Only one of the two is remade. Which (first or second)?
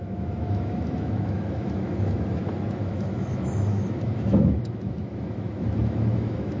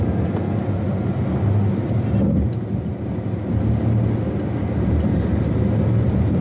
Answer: first